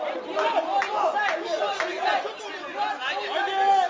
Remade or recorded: recorded